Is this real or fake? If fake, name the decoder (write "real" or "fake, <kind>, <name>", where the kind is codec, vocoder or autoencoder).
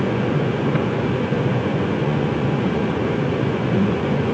fake, vocoder, Vocos